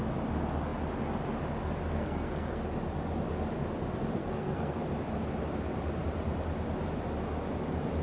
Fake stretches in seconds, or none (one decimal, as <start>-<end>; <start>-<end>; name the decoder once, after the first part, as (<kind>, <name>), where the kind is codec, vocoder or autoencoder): 1.9-2.6 (codec, SNAC); 4.2-4.8